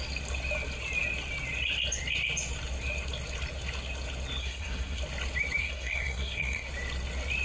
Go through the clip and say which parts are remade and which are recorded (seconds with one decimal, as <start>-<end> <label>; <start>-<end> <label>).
0.0-4.4 recorded; 4.4-5.0 remade; 5.0-5.6 recorded; 5.6-6.7 remade; 6.7-7.4 recorded